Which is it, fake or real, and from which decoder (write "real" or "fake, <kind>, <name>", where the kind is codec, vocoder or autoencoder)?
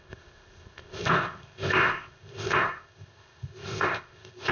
fake, codec, ZipCodec